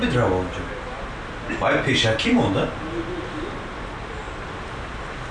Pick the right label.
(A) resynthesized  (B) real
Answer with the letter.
B